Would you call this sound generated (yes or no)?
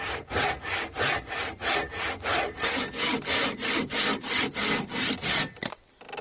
no